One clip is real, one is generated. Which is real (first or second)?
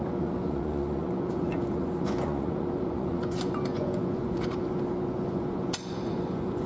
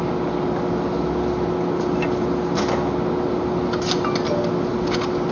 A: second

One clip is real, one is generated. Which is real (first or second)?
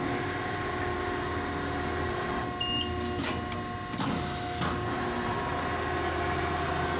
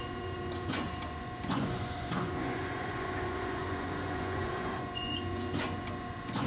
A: first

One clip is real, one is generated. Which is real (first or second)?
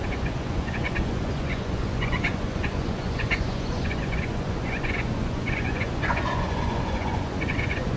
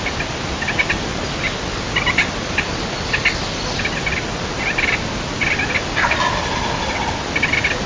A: second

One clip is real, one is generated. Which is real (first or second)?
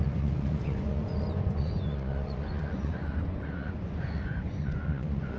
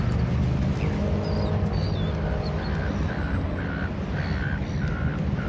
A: second